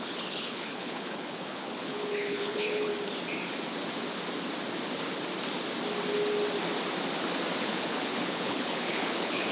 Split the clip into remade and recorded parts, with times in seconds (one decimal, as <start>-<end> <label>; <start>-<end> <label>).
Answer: 0.0-2.9 remade; 2.9-7.6 recorded; 7.6-9.5 remade